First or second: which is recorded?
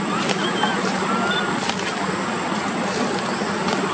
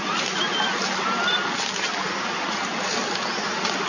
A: second